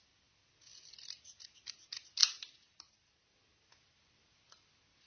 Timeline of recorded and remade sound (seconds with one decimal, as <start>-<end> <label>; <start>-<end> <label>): 0.0-5.1 recorded